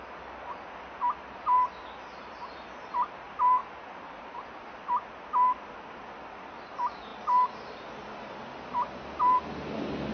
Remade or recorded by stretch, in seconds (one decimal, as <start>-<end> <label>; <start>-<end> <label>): 0.0-10.1 recorded